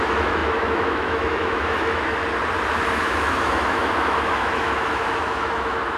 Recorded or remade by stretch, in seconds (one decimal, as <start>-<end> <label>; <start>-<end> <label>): 0.0-2.2 remade; 2.2-2.9 recorded; 2.9-6.0 remade